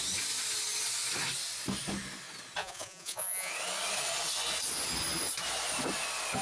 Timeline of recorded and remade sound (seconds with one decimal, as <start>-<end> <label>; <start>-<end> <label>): 0.0-2.6 recorded; 2.6-3.5 remade; 3.5-6.4 recorded